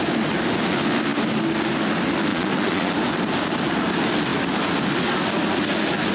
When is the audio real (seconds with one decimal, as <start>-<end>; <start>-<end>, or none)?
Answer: 0.0-2.3; 2.9-6.1